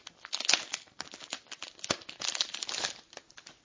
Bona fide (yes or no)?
yes